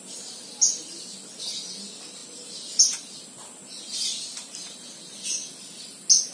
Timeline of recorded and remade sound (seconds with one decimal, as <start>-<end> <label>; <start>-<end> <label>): 0.0-6.3 recorded